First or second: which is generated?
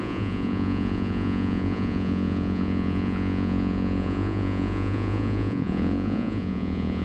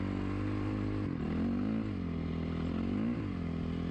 first